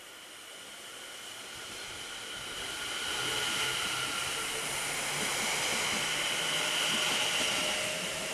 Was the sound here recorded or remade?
recorded